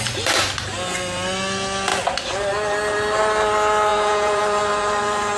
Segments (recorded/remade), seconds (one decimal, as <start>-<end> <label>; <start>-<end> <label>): 0.0-3.9 recorded; 3.9-4.4 remade; 4.4-5.4 recorded